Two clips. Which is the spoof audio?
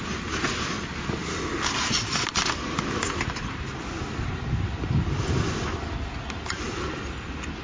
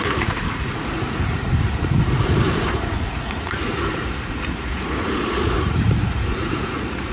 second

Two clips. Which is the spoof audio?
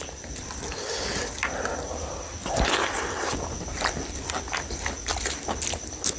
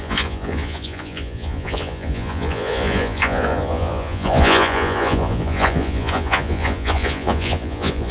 second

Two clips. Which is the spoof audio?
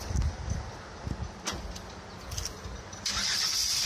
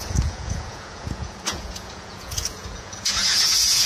second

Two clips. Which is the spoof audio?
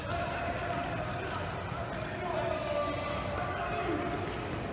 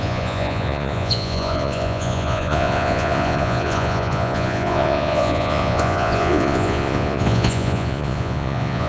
second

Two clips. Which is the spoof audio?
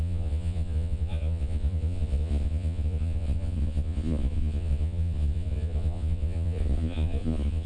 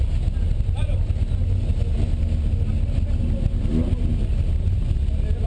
first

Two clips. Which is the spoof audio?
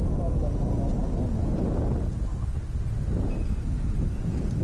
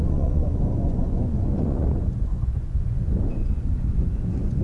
second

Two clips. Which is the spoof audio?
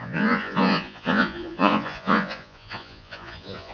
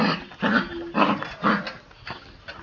first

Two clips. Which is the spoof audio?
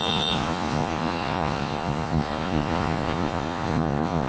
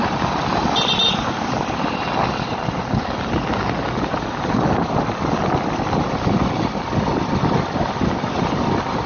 first